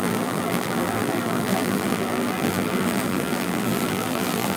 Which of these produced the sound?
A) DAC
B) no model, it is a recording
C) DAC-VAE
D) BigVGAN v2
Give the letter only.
D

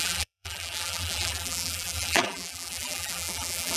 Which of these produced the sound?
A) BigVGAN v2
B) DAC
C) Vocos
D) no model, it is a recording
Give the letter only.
A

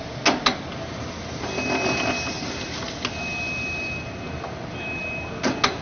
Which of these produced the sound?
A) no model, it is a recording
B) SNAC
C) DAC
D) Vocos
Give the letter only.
A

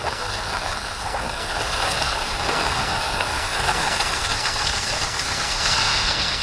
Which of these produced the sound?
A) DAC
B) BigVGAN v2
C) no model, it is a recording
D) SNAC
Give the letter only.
D